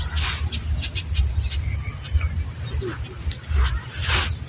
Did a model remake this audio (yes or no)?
no